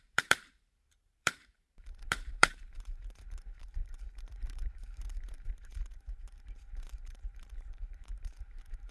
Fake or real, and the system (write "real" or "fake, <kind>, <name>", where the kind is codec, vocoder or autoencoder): fake, vocoder, BigVGAN v2